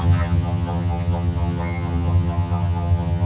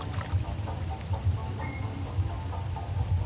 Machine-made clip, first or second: first